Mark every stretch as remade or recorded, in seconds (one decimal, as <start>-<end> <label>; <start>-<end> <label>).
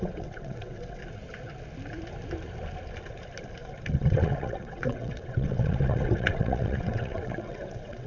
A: 0.0-1.0 remade; 1.0-3.9 recorded; 3.9-8.1 remade